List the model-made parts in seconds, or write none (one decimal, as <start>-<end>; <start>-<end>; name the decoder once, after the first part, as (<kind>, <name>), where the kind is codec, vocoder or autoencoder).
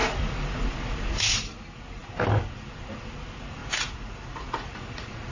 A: 3.6-5.3 (vocoder, Vocos)